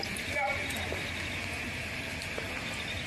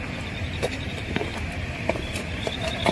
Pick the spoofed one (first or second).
second